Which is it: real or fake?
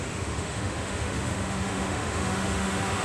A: fake